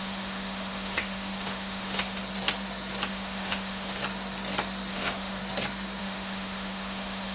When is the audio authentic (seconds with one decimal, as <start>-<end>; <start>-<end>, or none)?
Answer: 2.2-3.1; 4.0-4.9; 5.4-6.0